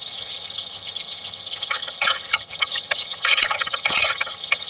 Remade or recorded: remade